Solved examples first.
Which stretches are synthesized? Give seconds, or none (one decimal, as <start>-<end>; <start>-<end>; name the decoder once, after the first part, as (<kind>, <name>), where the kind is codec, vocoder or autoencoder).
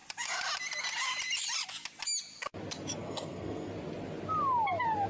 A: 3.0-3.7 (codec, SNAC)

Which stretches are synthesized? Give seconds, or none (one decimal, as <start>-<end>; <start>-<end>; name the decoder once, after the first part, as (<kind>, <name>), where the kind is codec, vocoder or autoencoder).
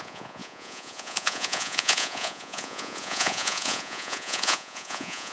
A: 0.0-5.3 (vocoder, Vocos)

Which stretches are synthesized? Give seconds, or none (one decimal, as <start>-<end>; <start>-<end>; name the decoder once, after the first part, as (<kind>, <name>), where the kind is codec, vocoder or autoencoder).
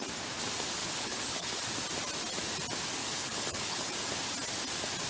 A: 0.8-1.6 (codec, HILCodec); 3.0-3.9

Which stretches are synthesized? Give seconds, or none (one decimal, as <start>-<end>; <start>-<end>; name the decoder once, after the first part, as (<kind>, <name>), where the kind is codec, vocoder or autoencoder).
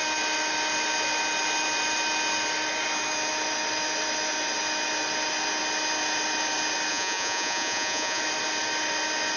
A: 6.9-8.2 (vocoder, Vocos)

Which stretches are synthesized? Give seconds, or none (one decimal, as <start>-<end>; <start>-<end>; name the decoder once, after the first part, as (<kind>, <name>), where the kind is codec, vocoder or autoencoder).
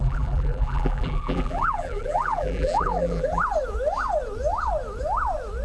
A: 0.0-3.4 (vocoder, BigVGAN v2)